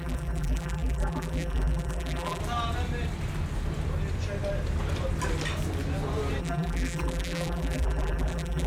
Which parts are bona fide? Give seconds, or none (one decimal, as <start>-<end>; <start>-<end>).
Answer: 2.4-6.4